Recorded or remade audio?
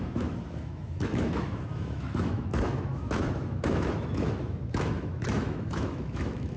remade